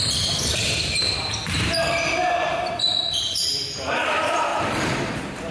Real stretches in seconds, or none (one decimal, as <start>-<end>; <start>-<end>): 3.5-4.1